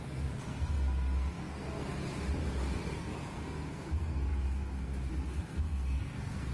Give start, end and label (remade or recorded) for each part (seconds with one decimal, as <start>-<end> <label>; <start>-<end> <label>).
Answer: 0.0-1.9 remade; 1.9-3.0 recorded; 3.0-6.5 remade